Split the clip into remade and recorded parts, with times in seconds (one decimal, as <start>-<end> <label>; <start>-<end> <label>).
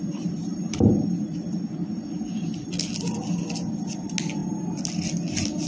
0.0-5.7 recorded